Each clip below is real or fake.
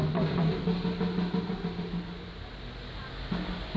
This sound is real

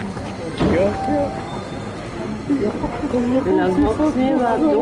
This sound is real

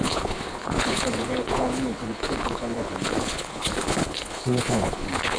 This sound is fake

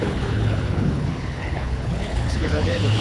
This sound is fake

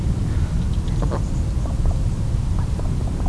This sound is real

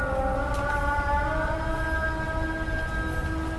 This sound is real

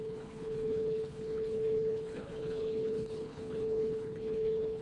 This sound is fake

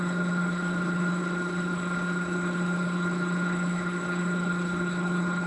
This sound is fake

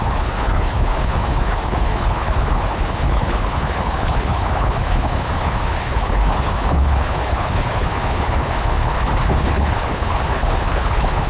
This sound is fake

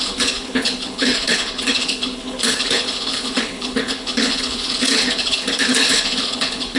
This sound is fake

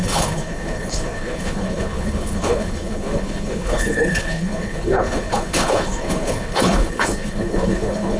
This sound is fake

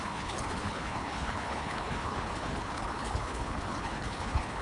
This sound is fake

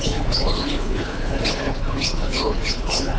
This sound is fake